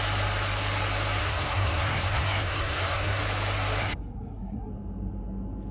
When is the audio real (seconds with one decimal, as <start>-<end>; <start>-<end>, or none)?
0.0-1.2; 3.2-3.8; 4.7-5.7